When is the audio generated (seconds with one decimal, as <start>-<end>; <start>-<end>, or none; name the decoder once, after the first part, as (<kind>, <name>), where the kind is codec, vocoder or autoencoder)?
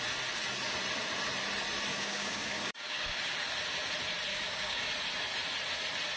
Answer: 1.9-3.2 (codec, DAC); 4.3-4.9